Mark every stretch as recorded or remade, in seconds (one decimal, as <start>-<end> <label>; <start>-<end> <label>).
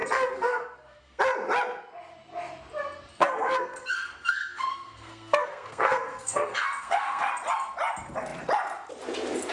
0.0-1.2 remade; 1.2-3.1 recorded; 3.1-7.3 remade; 7.3-9.5 recorded